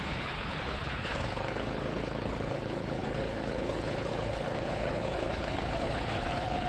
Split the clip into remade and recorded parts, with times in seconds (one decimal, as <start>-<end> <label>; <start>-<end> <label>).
0.0-6.7 remade